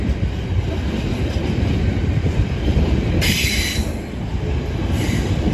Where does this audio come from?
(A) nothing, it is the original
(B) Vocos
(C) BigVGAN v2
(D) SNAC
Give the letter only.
C